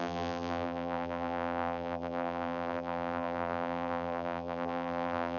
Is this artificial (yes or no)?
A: yes